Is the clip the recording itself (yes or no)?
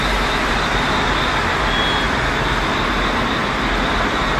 yes